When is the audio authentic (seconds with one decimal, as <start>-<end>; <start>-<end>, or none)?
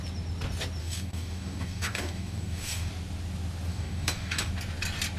0.0-0.8; 2.9-3.7; 4.5-5.2